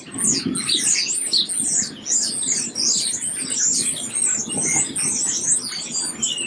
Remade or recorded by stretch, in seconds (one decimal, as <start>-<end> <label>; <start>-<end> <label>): 0.0-6.5 recorded